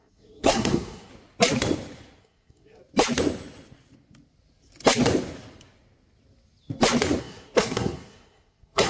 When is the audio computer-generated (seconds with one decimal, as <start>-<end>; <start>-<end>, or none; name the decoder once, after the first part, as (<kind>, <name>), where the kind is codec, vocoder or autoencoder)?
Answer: 0.0-1.1 (codec, SNAC); 2.2-2.8; 7.2-8.9